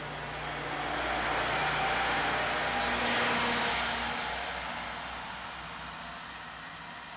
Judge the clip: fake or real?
real